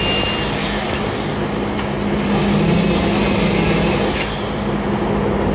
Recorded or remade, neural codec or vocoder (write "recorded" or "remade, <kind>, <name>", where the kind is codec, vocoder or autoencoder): recorded